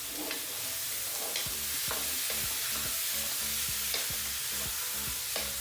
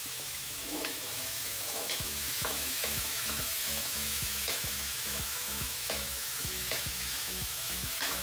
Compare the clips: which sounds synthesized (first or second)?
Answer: second